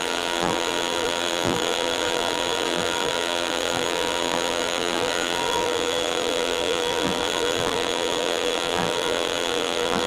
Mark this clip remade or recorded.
remade